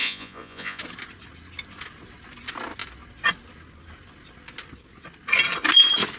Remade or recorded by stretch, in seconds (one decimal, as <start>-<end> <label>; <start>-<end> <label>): 0.0-0.8 remade; 0.8-6.2 recorded